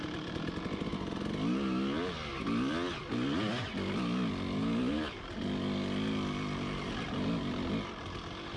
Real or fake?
real